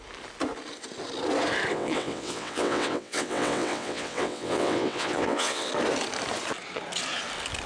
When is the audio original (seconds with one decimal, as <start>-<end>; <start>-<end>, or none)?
0.0-1.7; 5.7-7.7